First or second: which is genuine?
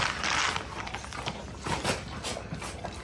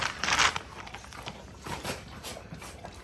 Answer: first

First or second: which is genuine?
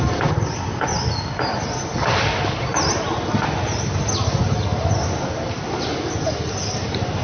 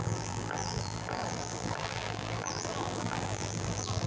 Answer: first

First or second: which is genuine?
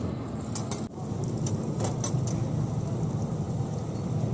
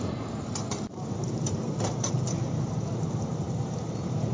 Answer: first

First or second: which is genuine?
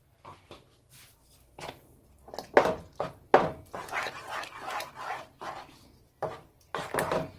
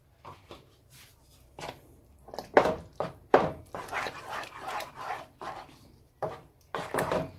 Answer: first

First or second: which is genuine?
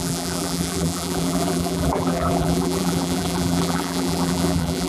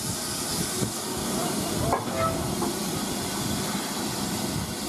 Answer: second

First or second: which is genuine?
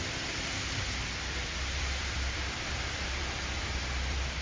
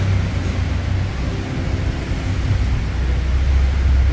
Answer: second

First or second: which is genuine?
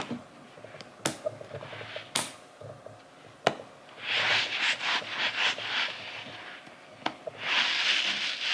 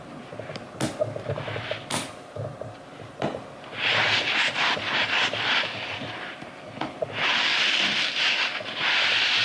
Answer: first